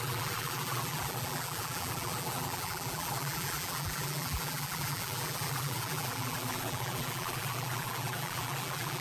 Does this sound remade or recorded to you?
remade